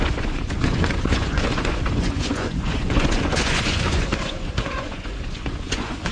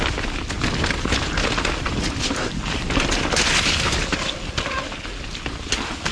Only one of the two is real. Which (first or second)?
second